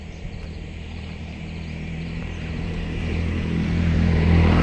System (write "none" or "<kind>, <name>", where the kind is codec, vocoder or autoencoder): vocoder, BigVGAN v2